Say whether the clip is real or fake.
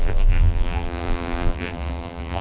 fake